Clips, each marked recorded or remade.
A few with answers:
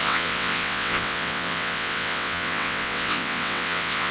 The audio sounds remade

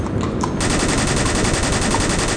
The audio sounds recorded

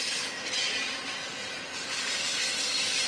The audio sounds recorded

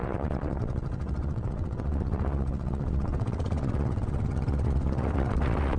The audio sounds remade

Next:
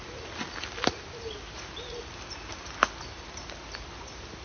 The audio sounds recorded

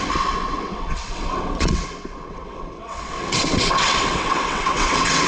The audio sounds remade